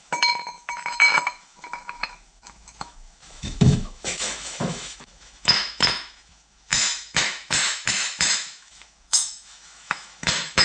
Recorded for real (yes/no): no